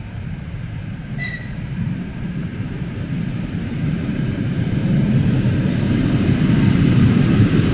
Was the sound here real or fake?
fake